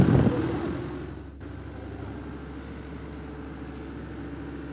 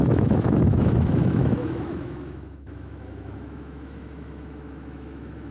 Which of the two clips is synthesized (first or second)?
second